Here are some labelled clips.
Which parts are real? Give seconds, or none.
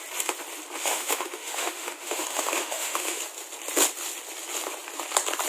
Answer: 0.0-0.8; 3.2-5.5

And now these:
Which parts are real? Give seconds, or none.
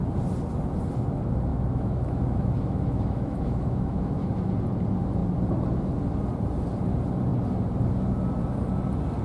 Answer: 0.0-1.5; 4.5-9.2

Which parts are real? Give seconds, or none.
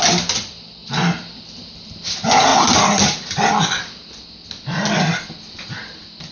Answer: 0.0-6.3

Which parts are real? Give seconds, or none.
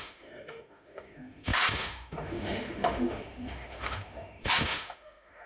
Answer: none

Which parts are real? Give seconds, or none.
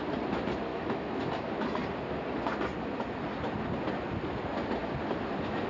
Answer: 0.0-0.7; 1.2-5.7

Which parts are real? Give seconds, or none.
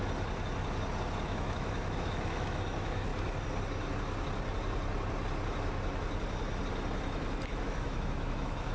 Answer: 0.0-1.2; 3.1-7.6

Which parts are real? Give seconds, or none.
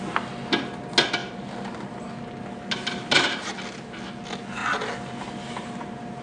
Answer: 0.0-6.2